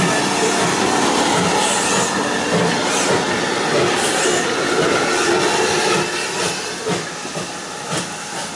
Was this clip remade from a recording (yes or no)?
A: no